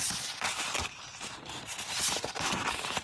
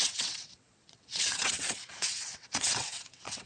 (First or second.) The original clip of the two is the first